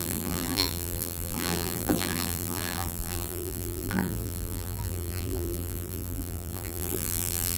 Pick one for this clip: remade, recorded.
remade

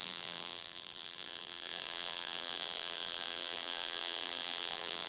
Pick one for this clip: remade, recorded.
remade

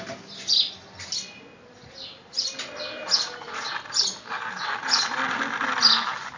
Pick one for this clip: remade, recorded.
recorded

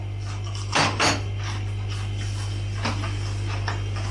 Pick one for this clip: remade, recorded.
recorded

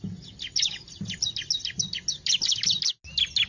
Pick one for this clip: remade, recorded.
recorded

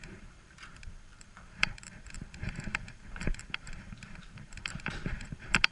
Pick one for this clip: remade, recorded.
remade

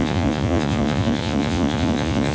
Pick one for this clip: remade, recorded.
remade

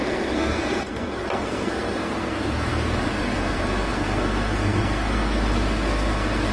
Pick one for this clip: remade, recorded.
remade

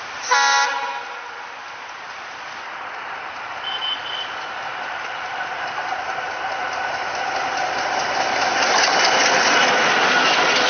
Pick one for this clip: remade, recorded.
recorded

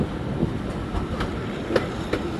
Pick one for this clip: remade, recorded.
recorded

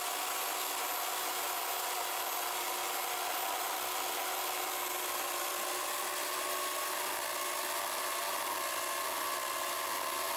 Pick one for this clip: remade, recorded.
recorded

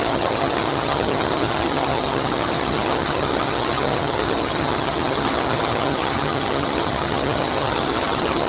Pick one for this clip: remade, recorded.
remade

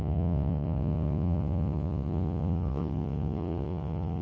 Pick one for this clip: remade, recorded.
remade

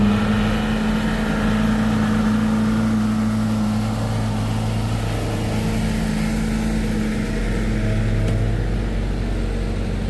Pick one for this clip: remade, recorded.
recorded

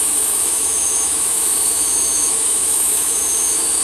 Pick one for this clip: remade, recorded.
remade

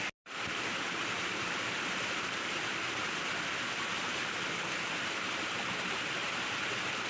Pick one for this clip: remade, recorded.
recorded